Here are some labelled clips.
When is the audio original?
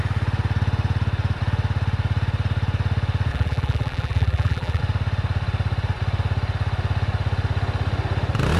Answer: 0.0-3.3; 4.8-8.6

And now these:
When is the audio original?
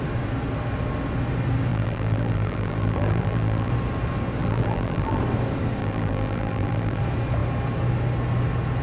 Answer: 0.0-1.7; 3.7-4.4; 5.2-5.8; 7.0-8.8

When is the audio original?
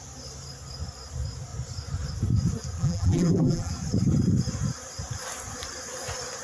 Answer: 0.0-2.8; 3.7-6.4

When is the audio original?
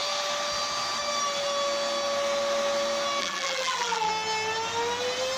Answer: 0.0-3.2; 4.1-5.4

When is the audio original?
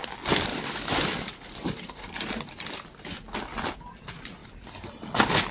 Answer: 0.0-0.5; 3.2-4.4; 5.0-5.5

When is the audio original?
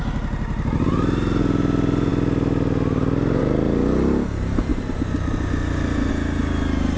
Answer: 0.0-4.7; 6.1-7.0